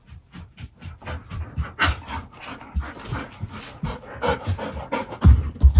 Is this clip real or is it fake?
real